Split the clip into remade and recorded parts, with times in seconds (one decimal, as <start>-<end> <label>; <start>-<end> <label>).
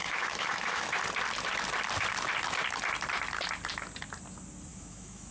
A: 0.0-1.0 remade; 1.0-4.7 recorded; 4.7-5.3 remade